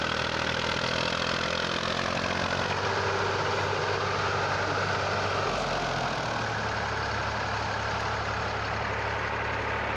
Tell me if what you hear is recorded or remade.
recorded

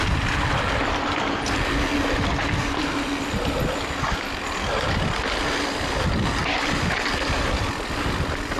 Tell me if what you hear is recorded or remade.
recorded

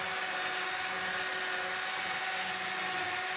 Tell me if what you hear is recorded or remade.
recorded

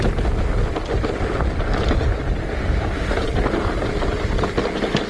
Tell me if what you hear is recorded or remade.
recorded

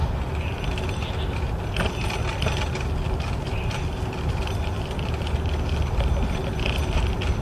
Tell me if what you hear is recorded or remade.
recorded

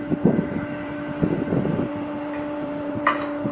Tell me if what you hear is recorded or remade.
remade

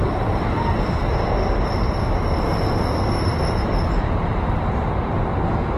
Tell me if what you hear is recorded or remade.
recorded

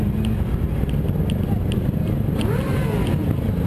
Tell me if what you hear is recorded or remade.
recorded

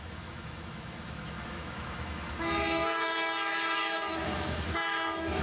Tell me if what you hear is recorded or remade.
remade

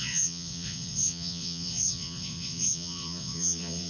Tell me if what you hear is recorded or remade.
remade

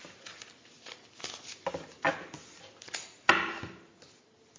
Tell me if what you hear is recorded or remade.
recorded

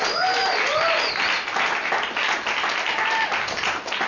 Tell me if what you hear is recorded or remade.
recorded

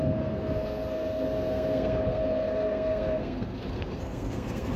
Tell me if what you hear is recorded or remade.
remade